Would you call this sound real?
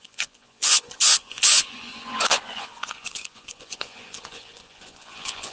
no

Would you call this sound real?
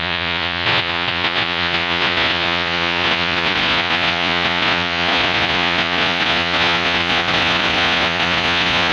no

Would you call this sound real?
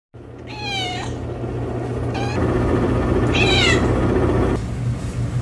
yes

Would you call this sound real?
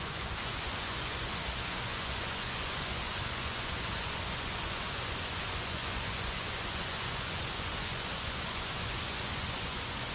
no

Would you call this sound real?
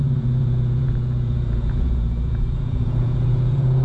no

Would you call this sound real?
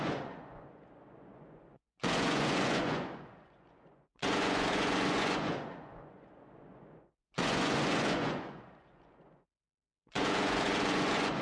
no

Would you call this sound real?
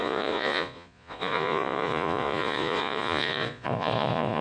no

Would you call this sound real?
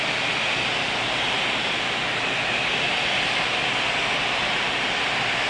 yes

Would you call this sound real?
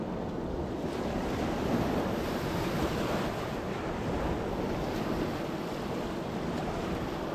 yes